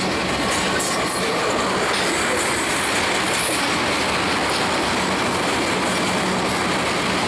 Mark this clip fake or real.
real